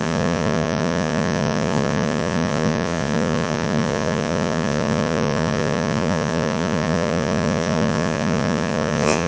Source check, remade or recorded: remade